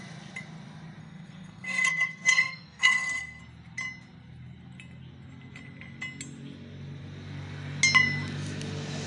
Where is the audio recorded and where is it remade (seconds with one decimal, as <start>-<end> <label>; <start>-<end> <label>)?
0.0-1.0 recorded; 1.0-3.4 remade; 3.4-9.1 recorded